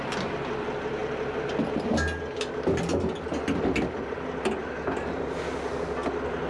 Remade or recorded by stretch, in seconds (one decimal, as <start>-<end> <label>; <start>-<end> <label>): 0.0-6.5 recorded